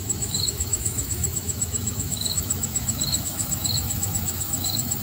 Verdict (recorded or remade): remade